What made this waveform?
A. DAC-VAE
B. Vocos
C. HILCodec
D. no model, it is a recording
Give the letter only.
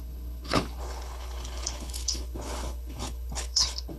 C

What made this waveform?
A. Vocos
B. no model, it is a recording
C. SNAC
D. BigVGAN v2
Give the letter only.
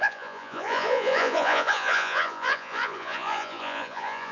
A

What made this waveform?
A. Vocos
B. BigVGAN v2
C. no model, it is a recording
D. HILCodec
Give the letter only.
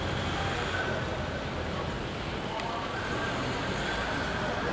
B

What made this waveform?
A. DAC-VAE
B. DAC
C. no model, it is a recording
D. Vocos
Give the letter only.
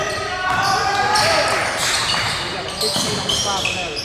C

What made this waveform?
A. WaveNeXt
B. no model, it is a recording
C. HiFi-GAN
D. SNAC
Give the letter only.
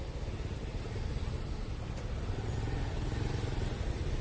B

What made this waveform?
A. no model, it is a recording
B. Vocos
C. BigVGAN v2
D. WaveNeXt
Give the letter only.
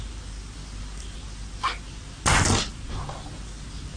A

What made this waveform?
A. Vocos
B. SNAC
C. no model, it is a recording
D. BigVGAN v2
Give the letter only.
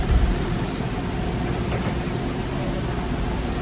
C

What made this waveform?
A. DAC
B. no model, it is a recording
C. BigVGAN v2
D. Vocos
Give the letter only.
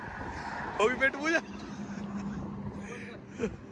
B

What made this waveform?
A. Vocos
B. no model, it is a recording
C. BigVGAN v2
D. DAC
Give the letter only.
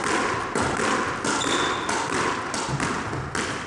B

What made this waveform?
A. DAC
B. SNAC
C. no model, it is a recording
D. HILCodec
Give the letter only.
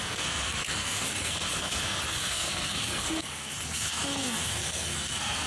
B